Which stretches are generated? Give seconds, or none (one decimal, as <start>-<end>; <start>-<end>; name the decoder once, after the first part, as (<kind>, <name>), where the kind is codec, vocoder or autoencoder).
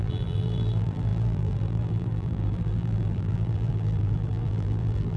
0.0-5.2 (vocoder, BigVGAN v2)